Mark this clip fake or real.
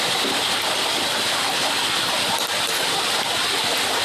real